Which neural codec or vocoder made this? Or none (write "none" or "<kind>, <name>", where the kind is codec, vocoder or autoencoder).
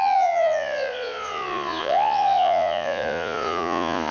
vocoder, Vocos